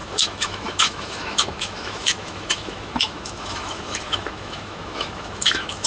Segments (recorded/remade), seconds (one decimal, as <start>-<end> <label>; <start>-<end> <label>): 0.0-5.9 remade